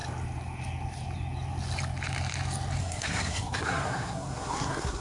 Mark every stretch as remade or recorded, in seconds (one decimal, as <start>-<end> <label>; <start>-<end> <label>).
0.0-2.8 recorded; 2.8-5.0 remade